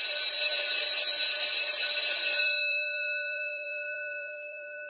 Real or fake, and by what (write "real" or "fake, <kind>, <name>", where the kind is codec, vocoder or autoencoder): fake, vocoder, BigVGAN v2